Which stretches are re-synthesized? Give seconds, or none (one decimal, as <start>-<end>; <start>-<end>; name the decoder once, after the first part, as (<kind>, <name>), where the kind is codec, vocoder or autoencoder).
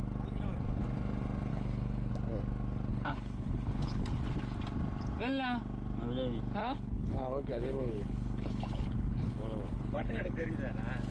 1.5-2.1 (codec, HILCodec); 2.9-4.2; 6.6-10.5